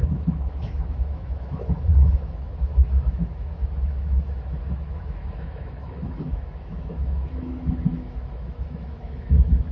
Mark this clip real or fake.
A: fake